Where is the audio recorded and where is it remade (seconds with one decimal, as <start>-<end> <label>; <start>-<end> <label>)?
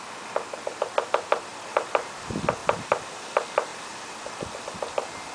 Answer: 0.0-1.5 recorded; 1.5-2.2 remade; 2.2-2.6 recorded; 2.6-3.3 remade; 3.3-3.7 recorded; 3.7-4.2 remade; 4.2-5.3 recorded